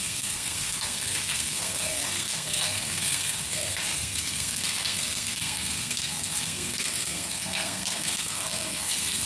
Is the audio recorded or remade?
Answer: remade